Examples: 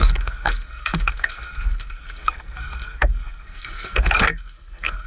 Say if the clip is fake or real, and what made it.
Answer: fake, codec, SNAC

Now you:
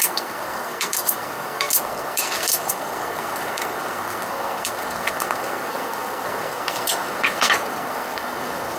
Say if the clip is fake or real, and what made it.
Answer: fake, codec, SNAC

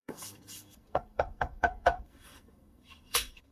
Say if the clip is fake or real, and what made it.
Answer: fake, codec, SNAC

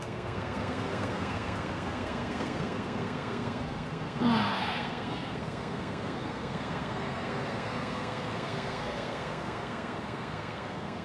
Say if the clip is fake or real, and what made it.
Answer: fake, codec, SNAC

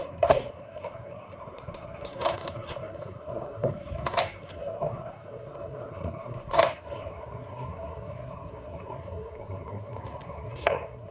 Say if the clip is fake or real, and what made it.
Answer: fake, codec, SNAC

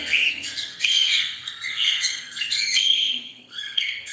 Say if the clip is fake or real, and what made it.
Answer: fake, codec, SNAC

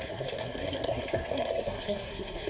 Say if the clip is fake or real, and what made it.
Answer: fake, codec, SNAC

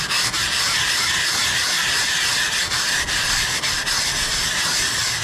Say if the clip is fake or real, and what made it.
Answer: real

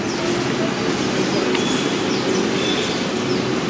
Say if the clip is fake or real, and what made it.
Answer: real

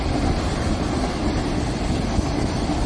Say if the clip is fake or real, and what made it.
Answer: real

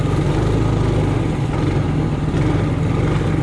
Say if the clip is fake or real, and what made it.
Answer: real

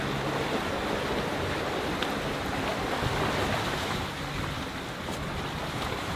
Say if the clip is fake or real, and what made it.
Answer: real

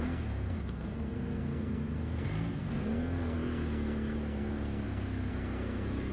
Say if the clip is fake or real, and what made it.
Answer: fake, codec, SNAC